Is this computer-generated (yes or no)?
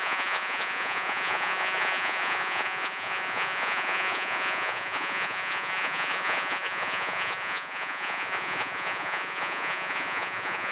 yes